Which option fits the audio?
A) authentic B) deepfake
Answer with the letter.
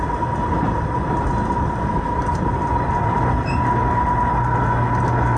A